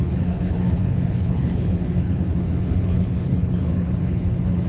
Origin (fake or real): fake